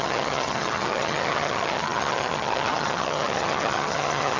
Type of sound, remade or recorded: remade